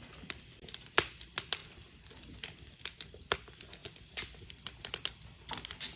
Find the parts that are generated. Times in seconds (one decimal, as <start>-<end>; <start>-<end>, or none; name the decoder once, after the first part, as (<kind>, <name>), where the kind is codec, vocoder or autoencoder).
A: 1.6-3.1 (vocoder, BigVGAN v2)